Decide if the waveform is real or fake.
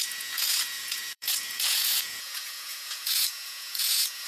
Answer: fake